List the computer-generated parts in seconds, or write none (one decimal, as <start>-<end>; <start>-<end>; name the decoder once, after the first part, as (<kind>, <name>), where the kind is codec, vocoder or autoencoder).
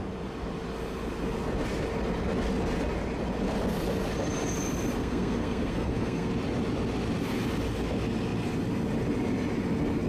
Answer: 5.0-6.3 (codec, SNAC)